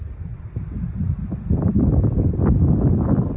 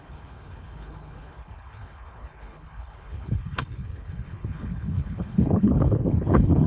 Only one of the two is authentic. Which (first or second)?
first